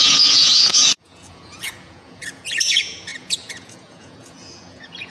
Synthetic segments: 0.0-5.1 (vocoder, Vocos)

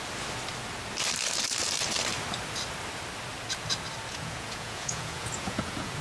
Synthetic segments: 4.1-6.0 (vocoder, Vocos)

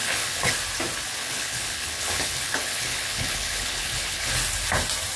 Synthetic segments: 0.0-0.5 (codec, HILCodec); 1.2-4.3

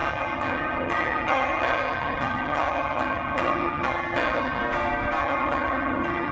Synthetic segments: 0.0-4.6 (vocoder, HiFi-GAN); 5.2-6.3

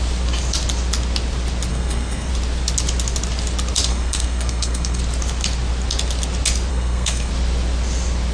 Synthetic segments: 1.7-2.3 (codec, SNAC); 3.9-5.0; 6.7-7.3

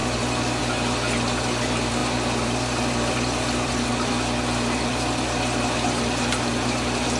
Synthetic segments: 0.0-0.6 (vocoder, BigVGAN v2); 2.0-3.7

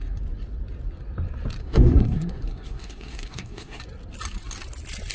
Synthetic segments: 1.6-3.8 (codec, SNAC)